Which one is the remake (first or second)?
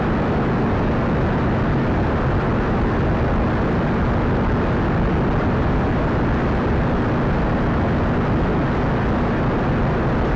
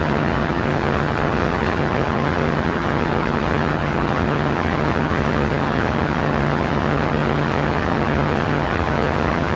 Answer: second